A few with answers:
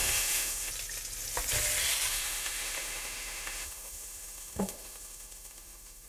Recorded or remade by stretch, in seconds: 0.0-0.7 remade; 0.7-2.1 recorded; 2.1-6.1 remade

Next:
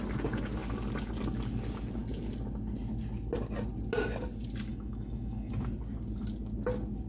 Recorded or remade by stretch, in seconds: 0.0-4.7 recorded; 4.7-5.5 remade; 5.5-7.1 recorded

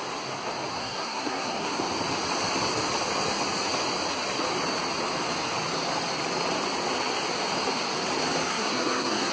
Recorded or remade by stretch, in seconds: 0.0-0.7 recorded; 0.7-1.8 remade; 1.8-8.5 recorded; 8.5-9.3 remade

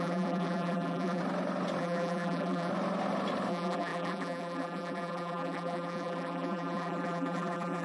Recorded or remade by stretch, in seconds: 0.0-1.2 remade; 1.2-1.8 recorded; 1.8-2.7 remade; 2.7-3.5 recorded; 3.5-7.8 remade

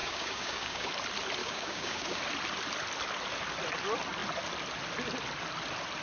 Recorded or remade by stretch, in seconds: 0.0-0.9 remade; 0.9-1.4 recorded; 1.4-2.2 remade; 2.2-6.0 recorded